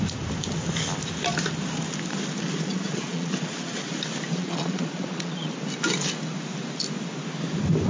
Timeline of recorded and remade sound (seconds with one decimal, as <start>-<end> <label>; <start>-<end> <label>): 0.0-2.7 recorded; 2.7-3.9 remade; 3.9-4.4 recorded; 4.4-5.5 remade; 5.5-7.9 recorded